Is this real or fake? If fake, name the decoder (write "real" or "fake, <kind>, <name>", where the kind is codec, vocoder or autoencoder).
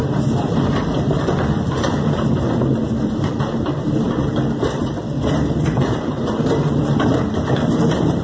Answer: fake, vocoder, BigVGAN v2